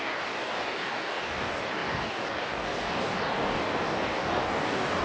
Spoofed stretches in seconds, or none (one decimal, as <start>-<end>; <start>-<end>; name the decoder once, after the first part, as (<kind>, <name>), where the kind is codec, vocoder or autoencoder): 0.0-5.0 (codec, DAC)